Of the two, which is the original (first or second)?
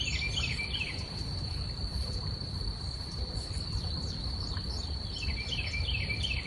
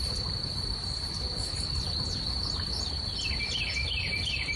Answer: second